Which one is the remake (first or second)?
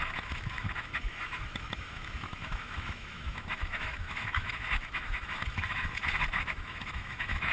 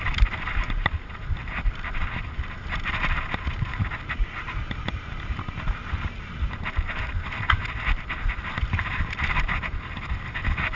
first